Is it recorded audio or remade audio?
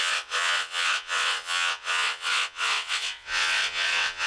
remade